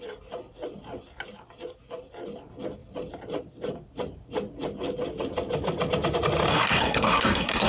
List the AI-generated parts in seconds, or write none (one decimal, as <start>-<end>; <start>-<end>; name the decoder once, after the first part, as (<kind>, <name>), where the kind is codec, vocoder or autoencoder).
6.5-7.7 (codec, SNAC)